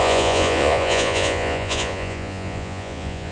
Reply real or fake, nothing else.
fake